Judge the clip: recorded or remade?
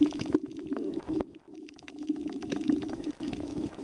remade